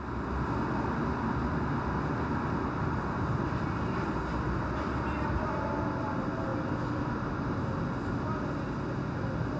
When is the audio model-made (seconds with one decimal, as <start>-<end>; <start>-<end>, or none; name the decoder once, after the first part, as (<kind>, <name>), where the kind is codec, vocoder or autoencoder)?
none